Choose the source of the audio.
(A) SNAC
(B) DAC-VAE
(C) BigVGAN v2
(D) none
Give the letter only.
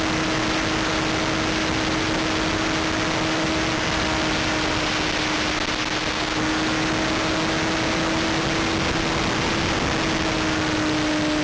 D